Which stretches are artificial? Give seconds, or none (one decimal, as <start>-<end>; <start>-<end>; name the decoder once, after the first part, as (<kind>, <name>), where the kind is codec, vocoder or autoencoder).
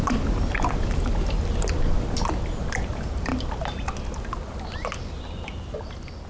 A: none